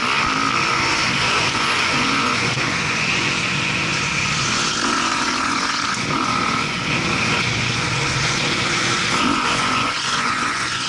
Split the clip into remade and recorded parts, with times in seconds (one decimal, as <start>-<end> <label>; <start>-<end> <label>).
0.0-0.7 recorded; 0.7-10.9 remade